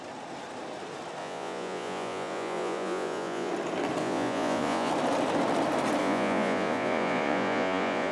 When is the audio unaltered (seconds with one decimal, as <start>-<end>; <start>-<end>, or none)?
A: 0.0-1.2; 3.5-4.0; 4.9-6.0